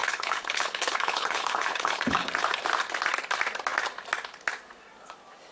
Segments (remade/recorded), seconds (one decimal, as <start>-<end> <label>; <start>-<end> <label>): 0.0-2.3 remade; 2.3-5.5 recorded